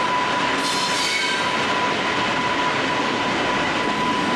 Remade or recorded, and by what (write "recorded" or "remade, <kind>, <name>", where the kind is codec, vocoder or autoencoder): recorded